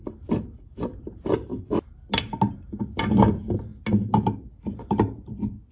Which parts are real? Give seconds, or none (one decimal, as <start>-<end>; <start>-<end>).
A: 0.0-1.0; 1.5-2.5; 3.7-4.7